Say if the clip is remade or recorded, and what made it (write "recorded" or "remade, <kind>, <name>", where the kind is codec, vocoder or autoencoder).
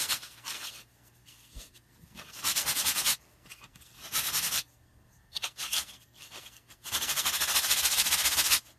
remade, codec, SNAC